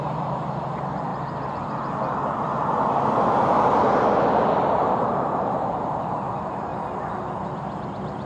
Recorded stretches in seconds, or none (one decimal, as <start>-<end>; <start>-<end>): 1.1-5.0; 6.7-8.3